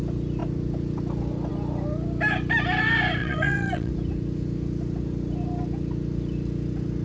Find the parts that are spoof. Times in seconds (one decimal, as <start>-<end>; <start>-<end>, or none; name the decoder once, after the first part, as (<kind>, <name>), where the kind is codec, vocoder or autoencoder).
3.2-3.9 (vocoder, WaveNeXt)